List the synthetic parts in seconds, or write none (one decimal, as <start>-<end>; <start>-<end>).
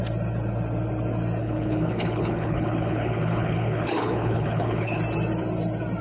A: 1.4-5.0